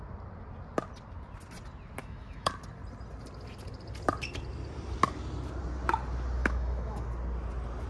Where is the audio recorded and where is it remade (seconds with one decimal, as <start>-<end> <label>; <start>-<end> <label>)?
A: 0.0-2.0 recorded; 2.0-2.5 remade; 2.5-6.4 recorded; 6.4-7.1 remade; 7.1-7.9 recorded